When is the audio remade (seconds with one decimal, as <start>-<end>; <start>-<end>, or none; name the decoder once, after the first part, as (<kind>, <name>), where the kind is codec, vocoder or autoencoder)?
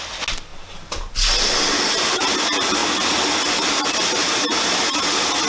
none